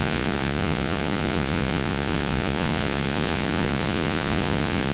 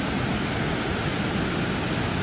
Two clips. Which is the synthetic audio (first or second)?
first